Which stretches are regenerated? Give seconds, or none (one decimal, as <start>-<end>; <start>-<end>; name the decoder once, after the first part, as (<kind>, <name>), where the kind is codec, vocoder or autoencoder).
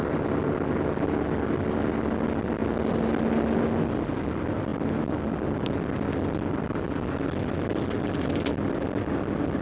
none